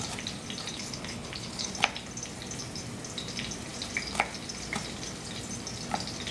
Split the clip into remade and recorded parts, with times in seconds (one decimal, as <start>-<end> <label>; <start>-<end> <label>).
0.0-0.7 recorded; 0.7-1.7 remade; 1.7-6.3 recorded